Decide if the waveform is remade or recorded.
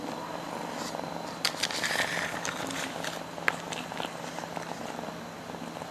recorded